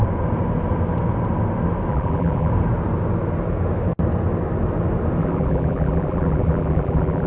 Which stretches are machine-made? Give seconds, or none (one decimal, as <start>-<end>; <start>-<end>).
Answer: 1.9-2.5; 5.2-7.3